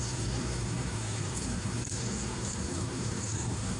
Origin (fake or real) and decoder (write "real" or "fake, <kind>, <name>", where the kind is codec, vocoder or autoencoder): fake, codec, SNAC